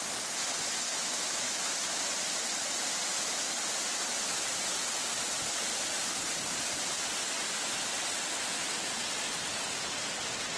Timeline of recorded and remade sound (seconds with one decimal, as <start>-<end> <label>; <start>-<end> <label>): 0.0-0.9 recorded; 0.9-2.0 remade; 2.0-10.6 recorded